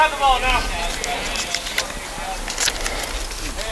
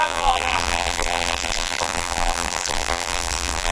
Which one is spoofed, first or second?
second